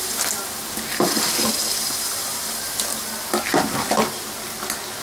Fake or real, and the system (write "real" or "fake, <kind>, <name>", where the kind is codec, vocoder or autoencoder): real